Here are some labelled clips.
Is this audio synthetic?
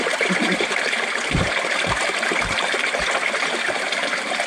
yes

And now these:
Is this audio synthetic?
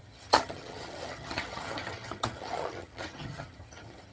yes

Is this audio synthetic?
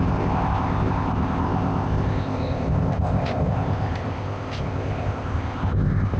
yes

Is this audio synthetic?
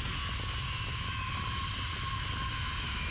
no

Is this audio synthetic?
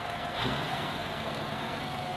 yes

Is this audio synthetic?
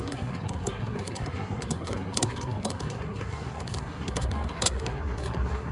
yes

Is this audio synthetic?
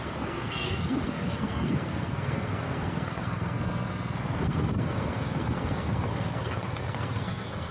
yes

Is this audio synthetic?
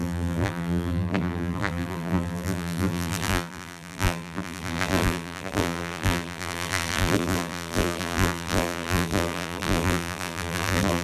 yes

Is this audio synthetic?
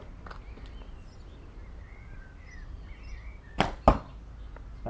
no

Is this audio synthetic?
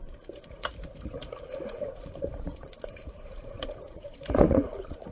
yes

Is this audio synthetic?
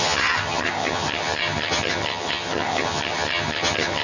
yes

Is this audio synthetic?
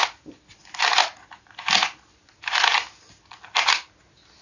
no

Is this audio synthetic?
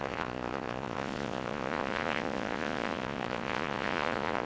yes